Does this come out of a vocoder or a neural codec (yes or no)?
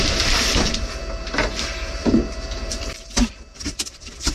yes